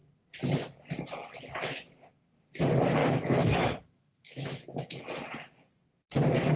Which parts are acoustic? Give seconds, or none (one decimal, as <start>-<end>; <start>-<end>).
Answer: 0.0-3.0; 5.0-6.6